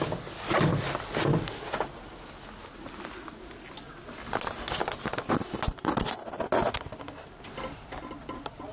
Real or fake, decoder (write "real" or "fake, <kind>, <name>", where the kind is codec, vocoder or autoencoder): real